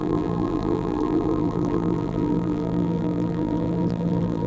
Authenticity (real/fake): fake